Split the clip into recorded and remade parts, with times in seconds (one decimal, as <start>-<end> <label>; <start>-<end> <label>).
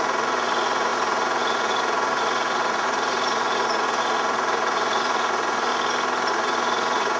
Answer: 0.0-5.7 remade; 5.7-6.3 recorded; 6.3-7.2 remade